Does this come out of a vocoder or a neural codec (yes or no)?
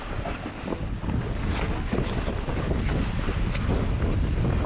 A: no